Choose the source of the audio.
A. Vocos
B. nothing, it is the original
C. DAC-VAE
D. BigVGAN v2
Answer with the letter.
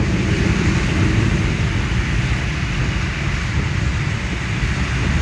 B